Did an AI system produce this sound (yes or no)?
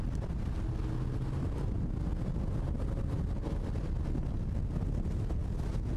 no